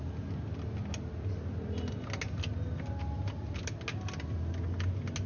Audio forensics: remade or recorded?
recorded